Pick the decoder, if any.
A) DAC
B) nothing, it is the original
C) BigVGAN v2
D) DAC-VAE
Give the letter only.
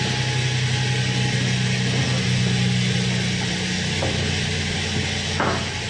B